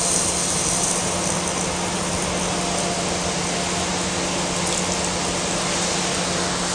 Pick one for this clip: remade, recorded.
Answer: recorded